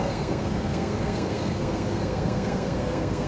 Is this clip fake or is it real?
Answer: fake